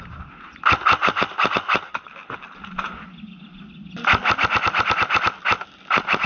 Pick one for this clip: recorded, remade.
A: recorded